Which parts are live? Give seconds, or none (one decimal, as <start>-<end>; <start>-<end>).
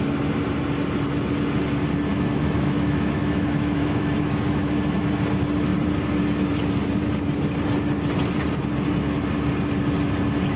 0.0-2.1; 5.0-10.6